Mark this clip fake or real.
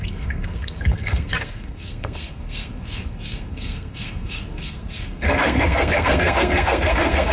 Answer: fake